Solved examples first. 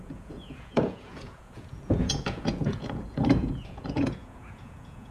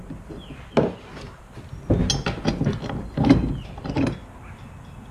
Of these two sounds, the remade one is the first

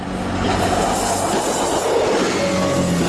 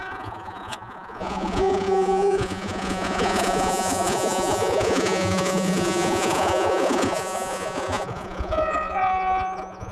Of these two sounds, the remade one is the second